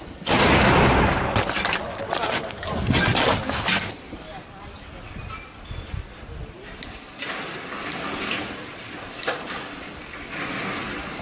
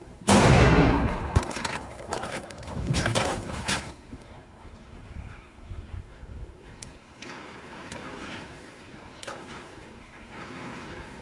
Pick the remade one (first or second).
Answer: second